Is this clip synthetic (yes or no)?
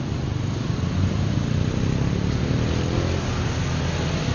no